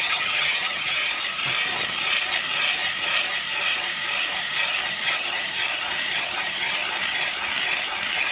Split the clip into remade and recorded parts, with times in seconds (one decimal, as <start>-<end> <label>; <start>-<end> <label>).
0.0-1.0 remade; 1.0-4.9 recorded; 4.9-5.6 remade; 5.6-6.2 recorded; 6.2-6.8 remade; 6.8-8.3 recorded